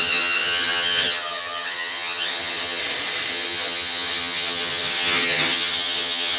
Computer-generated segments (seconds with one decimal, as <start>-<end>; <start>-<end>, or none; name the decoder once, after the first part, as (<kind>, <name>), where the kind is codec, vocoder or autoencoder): 0.0-2.8 (vocoder, HiFi-GAN); 3.3-6.4